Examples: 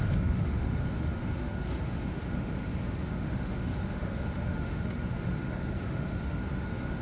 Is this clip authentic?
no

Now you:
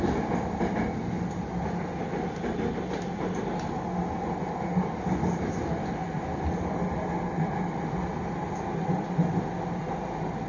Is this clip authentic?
yes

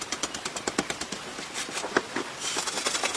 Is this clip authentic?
yes